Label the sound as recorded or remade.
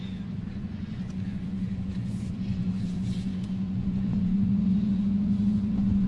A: remade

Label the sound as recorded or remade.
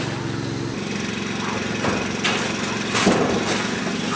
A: recorded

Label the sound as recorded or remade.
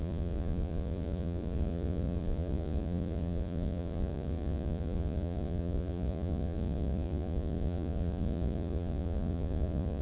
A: remade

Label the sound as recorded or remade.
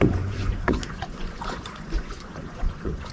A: remade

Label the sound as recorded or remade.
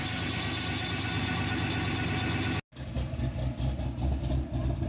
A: recorded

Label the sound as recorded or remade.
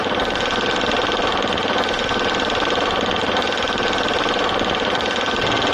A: recorded